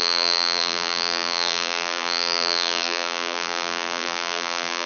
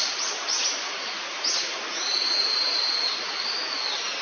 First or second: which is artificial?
first